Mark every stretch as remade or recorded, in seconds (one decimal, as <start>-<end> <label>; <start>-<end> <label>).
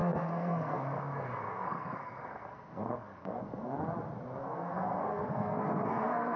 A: 0.0-3.8 remade; 3.8-4.4 recorded; 4.4-6.4 remade